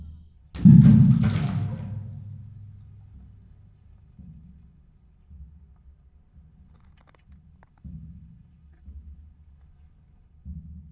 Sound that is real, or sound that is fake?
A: real